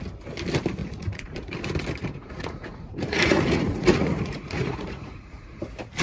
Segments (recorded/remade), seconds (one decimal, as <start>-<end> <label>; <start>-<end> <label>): 0.0-0.8 recorded; 0.8-1.5 remade; 1.5-2.0 recorded; 2.0-5.6 remade; 5.6-6.0 recorded